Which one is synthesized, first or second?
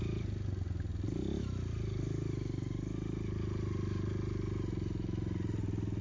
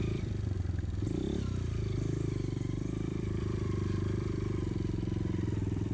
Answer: second